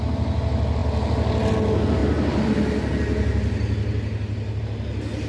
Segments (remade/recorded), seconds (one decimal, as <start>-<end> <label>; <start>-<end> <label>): 0.0-5.3 recorded